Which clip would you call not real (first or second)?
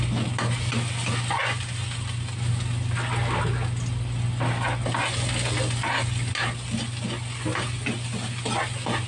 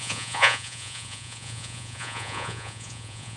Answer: second